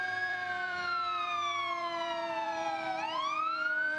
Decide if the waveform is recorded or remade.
remade